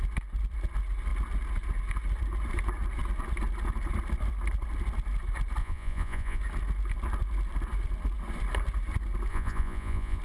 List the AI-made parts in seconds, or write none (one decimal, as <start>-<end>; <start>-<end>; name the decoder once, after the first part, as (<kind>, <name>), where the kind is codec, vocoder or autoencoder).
5.6-6.4 (vocoder, Vocos); 9.3-10.2